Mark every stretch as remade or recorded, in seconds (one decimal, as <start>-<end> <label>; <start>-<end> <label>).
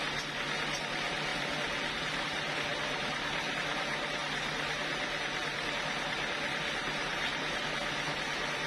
0.0-7.1 recorded; 7.1-7.6 remade; 7.6-8.7 recorded